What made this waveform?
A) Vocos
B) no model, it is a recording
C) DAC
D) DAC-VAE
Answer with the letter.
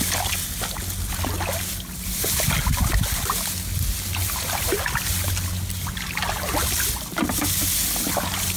B